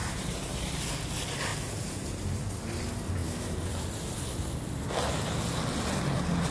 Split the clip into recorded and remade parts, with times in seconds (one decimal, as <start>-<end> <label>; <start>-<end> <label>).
0.0-0.8 remade; 0.8-1.5 recorded; 1.5-2.5 remade; 2.5-6.5 recorded